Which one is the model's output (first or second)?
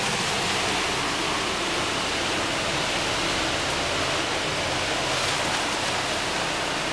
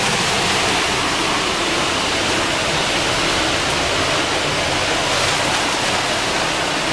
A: second